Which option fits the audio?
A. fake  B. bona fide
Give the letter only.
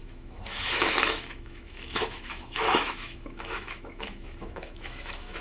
A